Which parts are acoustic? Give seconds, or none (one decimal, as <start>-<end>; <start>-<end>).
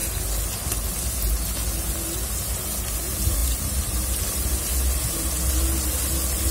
0.0-6.5